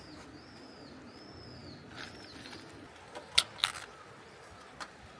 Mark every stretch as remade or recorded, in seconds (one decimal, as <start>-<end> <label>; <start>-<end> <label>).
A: 0.0-5.2 recorded